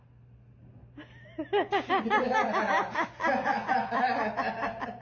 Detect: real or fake real